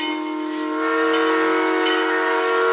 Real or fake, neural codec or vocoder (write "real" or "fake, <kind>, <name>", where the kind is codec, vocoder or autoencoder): real